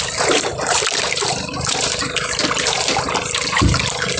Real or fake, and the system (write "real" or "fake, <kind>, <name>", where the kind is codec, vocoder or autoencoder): real